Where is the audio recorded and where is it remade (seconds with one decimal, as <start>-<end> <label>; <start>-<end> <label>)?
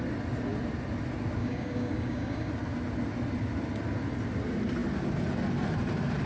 0.0-1.4 recorded; 1.4-2.5 remade; 2.5-6.3 recorded